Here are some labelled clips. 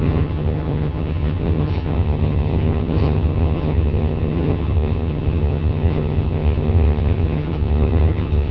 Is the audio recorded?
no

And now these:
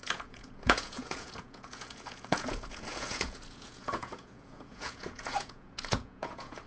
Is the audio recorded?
no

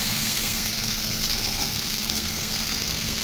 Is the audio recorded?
no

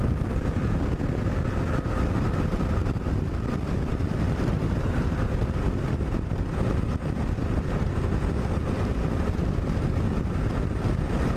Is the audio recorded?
yes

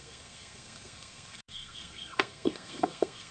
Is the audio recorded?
no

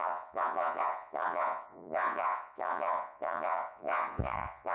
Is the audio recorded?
no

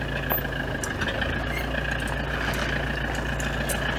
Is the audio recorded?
yes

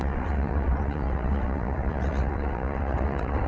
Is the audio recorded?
no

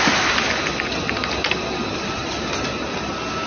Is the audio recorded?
yes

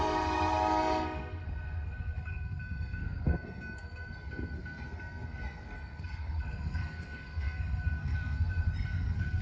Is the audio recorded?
no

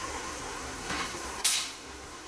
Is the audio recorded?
no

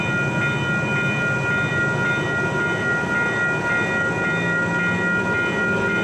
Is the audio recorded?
yes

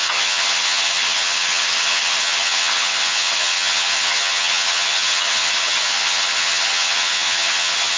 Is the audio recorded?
no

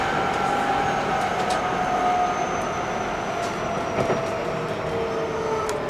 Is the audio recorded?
yes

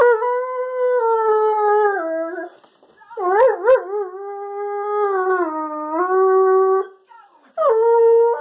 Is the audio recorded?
yes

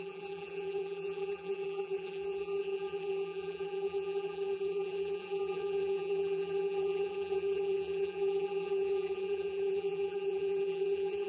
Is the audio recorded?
no